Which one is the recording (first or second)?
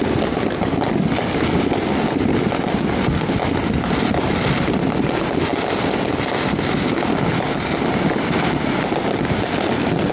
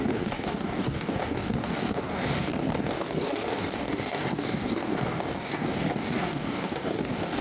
first